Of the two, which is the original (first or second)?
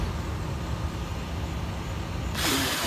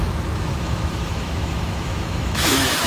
first